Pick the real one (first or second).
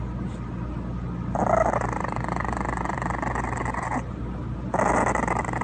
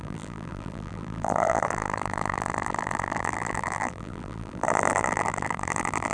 first